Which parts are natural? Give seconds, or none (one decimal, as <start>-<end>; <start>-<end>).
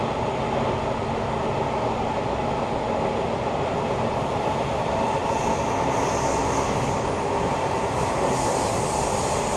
0.0-9.6